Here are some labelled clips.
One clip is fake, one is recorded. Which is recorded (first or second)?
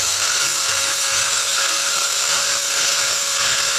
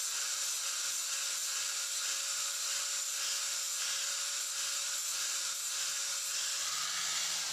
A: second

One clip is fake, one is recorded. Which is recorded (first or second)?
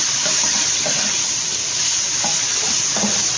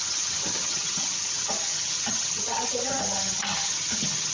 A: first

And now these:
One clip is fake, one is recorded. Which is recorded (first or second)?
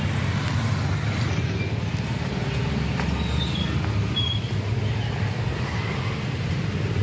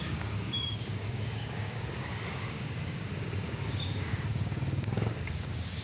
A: first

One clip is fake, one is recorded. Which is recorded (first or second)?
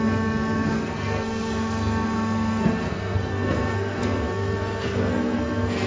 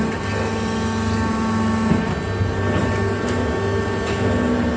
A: second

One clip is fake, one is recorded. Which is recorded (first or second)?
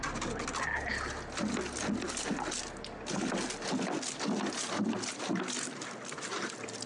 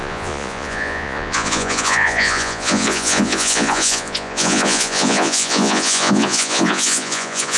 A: first